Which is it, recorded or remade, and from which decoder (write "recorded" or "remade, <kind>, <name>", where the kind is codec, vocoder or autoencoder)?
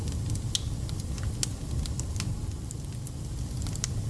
recorded